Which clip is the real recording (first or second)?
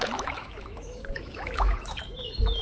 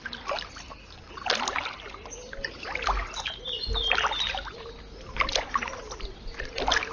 second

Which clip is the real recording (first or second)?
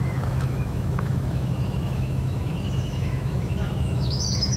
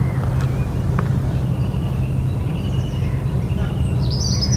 second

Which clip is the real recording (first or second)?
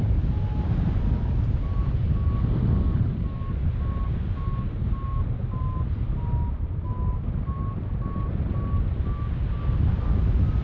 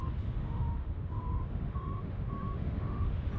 first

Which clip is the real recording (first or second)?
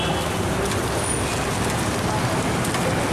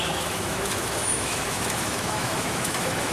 first